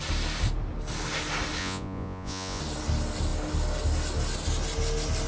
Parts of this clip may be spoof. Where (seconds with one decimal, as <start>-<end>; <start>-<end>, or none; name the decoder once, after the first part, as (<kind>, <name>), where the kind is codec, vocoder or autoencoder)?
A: 1.6-2.6 (vocoder, Vocos)